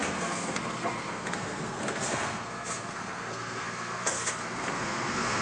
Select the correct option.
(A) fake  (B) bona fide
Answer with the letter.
A